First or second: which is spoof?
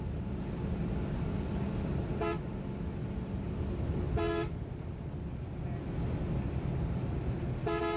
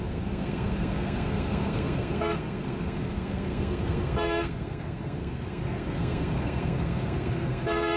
second